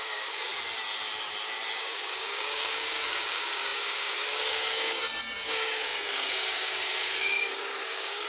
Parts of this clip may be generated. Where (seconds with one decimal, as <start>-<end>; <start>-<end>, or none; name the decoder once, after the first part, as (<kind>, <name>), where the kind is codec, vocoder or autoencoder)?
0.0-0.5 (codec, DAC); 1.8-8.3